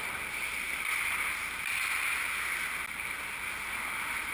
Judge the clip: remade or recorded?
recorded